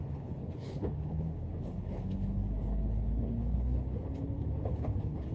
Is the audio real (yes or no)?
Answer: no